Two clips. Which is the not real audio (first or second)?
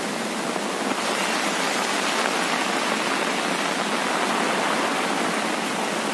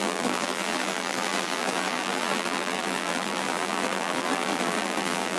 second